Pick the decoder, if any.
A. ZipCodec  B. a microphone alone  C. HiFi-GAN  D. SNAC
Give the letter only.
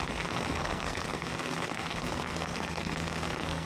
D